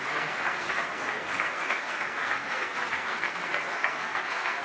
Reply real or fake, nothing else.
fake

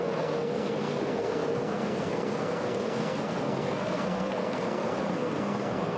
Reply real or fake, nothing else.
fake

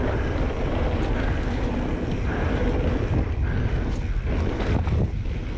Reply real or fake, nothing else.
real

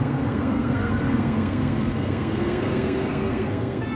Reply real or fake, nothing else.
fake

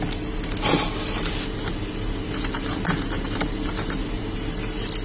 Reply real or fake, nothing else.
real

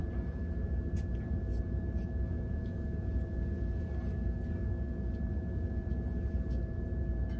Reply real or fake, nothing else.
real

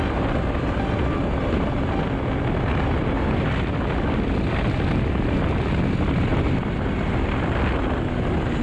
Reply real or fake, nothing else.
real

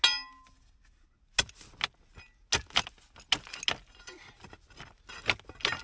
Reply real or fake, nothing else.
real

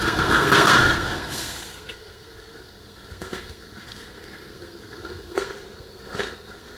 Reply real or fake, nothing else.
fake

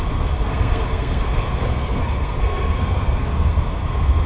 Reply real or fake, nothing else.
fake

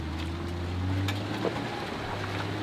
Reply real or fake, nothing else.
real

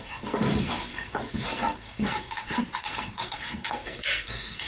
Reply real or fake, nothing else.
fake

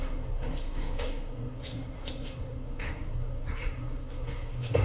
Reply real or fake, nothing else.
fake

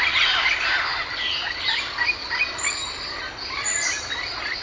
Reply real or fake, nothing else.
real